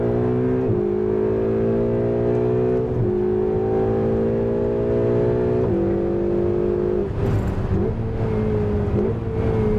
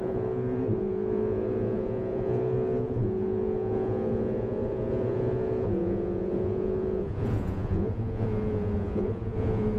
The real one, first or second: first